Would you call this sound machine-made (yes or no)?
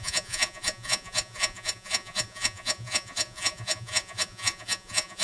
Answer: yes